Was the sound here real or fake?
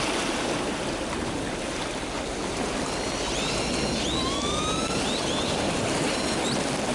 real